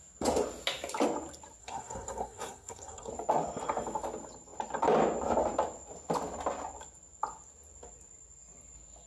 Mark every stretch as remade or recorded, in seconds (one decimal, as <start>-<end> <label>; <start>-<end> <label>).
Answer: 0.0-1.6 recorded; 1.6-3.1 remade; 3.1-9.1 recorded